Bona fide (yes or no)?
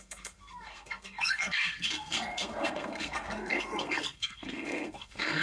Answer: no